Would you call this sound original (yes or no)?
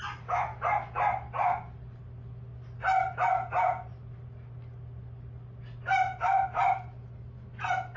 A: yes